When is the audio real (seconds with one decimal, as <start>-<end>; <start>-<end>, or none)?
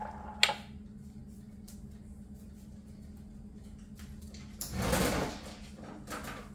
0.0-6.5